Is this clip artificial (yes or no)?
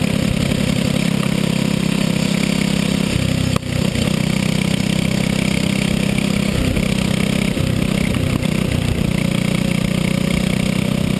no